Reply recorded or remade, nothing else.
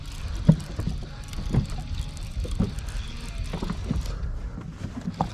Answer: recorded